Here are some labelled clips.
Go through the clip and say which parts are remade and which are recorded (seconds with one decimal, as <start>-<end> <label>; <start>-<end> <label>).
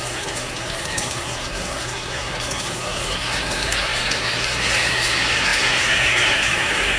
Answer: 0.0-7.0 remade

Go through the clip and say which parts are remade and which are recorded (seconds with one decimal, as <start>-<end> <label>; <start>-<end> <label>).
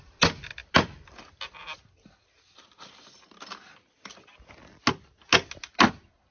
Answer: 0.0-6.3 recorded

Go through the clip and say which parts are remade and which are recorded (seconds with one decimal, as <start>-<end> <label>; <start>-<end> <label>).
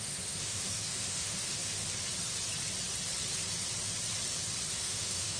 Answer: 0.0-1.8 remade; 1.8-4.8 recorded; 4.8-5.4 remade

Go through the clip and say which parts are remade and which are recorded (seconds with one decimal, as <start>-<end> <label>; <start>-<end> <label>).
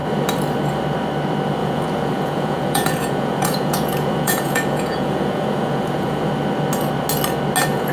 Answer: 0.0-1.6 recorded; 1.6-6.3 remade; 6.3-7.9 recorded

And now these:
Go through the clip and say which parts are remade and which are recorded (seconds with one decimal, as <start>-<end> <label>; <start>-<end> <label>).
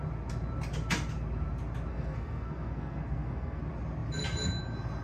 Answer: 0.0-1.9 recorded; 1.9-3.6 remade; 3.6-5.0 recorded